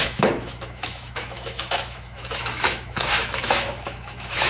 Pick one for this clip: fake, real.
fake